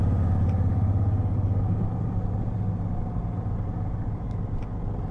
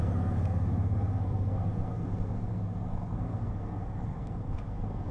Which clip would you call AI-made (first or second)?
second